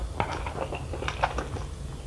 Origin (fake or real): real